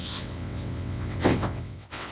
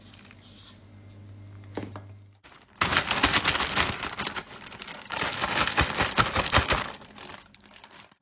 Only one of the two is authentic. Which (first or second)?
second